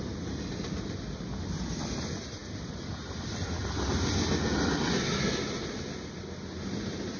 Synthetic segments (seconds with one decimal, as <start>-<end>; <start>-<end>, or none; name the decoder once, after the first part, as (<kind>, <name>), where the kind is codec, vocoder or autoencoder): none